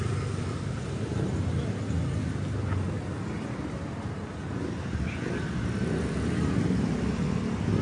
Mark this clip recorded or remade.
recorded